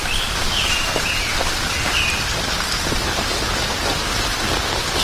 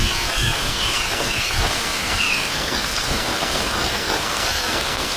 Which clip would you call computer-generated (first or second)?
second